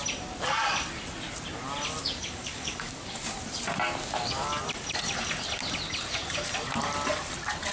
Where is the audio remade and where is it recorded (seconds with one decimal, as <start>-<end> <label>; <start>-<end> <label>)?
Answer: 0.0-2.0 recorded; 2.0-3.4 remade; 3.4-4.0 recorded; 4.0-4.6 remade; 4.6-7.7 recorded

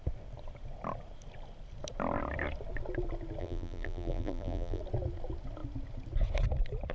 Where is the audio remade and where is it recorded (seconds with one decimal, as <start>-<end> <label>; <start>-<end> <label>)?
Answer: 0.0-3.4 recorded; 3.4-4.8 remade; 4.8-6.9 recorded

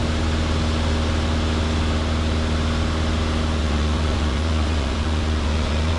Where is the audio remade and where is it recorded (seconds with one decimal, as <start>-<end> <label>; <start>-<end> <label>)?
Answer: 0.0-3.6 recorded; 3.6-6.0 remade